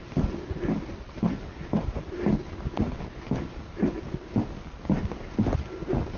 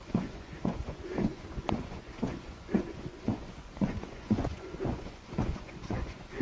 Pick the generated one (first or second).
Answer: second